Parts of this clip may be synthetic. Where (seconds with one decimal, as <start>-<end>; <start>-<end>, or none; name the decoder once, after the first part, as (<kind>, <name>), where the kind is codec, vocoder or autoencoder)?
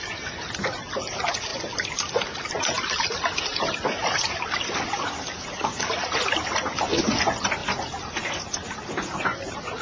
none